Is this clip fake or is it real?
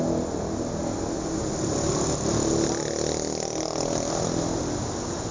real